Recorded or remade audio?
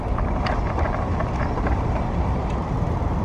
remade